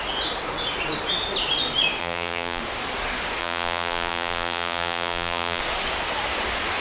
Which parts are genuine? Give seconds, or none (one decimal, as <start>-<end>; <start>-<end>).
0.0-2.0; 2.6-3.4; 5.6-6.8